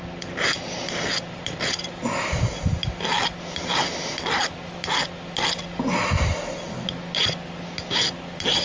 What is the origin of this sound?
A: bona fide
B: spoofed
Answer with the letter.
A